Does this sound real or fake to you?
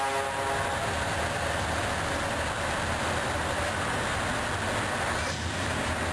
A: real